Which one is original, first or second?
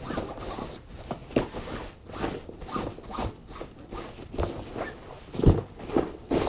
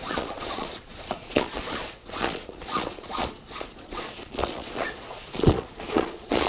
first